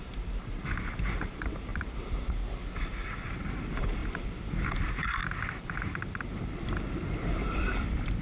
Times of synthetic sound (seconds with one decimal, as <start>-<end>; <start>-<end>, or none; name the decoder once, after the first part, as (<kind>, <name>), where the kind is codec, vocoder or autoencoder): 0.0-1.7 (vocoder, BigVGAN v2); 2.8-4.0; 4.8-5.2